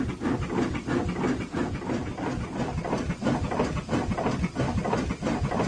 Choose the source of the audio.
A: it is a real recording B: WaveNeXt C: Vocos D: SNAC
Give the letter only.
A